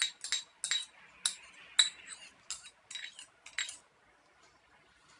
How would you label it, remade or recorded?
recorded